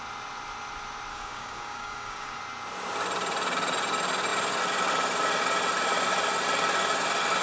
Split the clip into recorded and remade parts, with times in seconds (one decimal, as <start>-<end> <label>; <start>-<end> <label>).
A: 0.0-1.1 recorded; 1.1-2.4 remade; 2.4-7.4 recorded

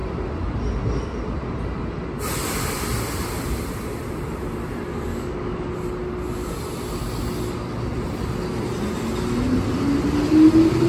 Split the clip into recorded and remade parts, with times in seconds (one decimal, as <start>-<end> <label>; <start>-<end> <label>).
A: 0.0-5.1 recorded; 5.1-5.7 remade; 5.7-10.9 recorded